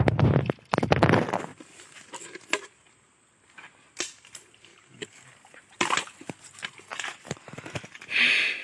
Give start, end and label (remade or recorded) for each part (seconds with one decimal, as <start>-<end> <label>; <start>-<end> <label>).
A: 0.0-4.7 recorded; 4.7-5.3 remade; 5.3-8.6 recorded